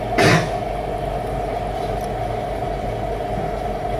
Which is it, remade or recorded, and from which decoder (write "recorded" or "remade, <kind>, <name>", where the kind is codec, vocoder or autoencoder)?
recorded